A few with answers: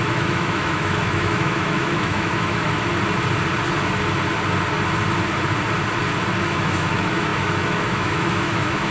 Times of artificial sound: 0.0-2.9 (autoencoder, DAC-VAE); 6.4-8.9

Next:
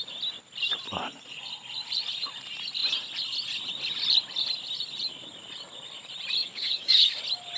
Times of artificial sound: 6.4-7.1 (codec, DAC)

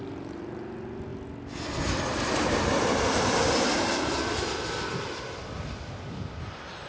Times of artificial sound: none